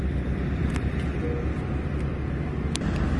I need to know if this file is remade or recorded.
recorded